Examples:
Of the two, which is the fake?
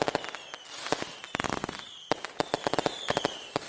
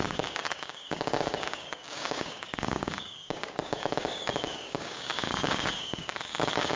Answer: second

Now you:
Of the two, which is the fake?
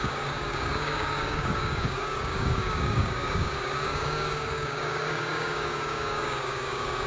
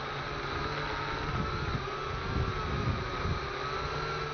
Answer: first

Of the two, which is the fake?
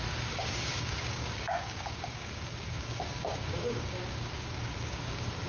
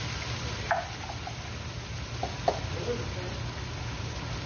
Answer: first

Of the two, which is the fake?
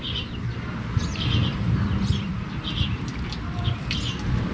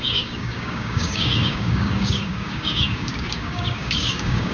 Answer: second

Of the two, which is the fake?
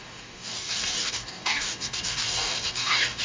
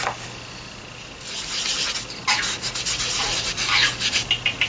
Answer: first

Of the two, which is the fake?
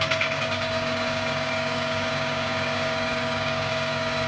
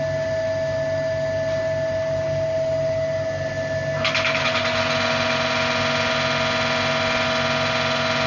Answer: first